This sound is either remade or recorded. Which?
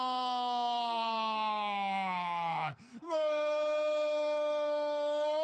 remade